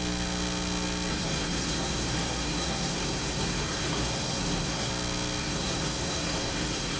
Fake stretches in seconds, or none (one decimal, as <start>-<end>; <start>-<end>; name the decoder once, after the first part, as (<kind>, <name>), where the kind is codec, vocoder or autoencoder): 1.1-4.9 (codec, SNAC); 5.4-7.0